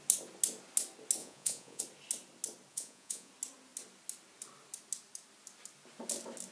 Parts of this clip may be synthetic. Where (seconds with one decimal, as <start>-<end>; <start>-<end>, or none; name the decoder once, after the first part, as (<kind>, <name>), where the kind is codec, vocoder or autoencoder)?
1.2-1.8 (vocoder, Vocos); 2.7-3.3